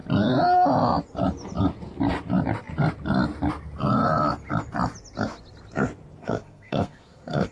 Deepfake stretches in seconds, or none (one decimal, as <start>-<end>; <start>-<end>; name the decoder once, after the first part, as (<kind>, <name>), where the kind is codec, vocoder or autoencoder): 6.2-7.5 (codec, SNAC)